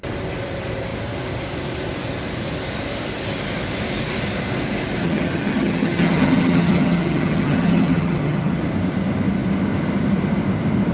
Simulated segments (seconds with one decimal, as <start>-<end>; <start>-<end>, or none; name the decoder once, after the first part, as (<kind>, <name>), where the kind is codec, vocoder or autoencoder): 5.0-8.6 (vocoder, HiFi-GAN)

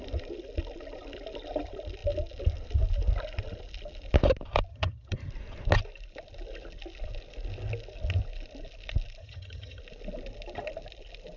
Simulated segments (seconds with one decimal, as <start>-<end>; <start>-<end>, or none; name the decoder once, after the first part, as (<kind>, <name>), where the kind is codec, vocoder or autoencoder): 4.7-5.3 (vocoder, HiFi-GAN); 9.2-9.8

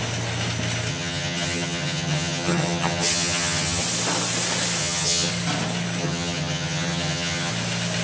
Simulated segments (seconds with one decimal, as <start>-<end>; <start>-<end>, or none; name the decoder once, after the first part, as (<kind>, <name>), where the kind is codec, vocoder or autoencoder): 0.9-3.8 (vocoder, HiFi-GAN); 4.8-5.3; 6.0-7.5